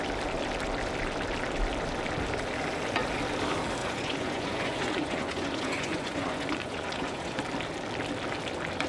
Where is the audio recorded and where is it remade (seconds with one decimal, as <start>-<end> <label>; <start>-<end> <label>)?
0.0-3.8 recorded; 3.8-7.4 remade; 7.4-8.9 recorded